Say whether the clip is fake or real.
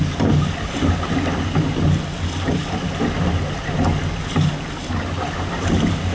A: real